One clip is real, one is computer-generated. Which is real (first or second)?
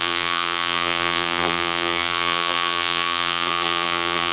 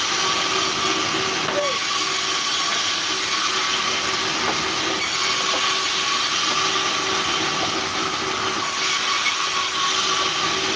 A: second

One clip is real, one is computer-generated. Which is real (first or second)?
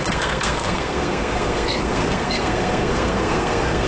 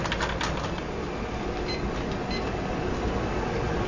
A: second